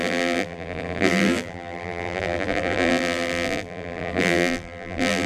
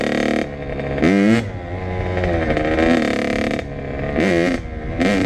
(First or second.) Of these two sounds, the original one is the second